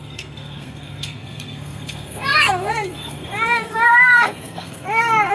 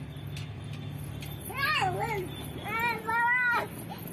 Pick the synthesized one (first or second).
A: first